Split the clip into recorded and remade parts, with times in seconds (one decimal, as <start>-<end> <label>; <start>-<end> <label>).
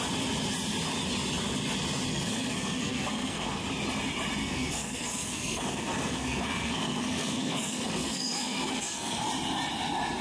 0.0-2.1 recorded; 2.1-3.6 remade; 3.6-4.4 recorded; 4.4-9.3 remade; 9.3-10.2 recorded